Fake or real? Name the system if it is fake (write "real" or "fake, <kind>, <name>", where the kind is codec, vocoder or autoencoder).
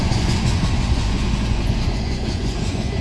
fake, vocoder, Vocos